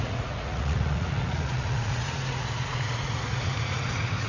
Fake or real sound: fake